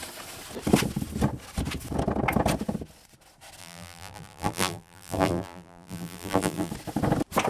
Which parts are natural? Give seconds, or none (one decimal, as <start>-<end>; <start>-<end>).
0.0-3.6; 6.7-7.5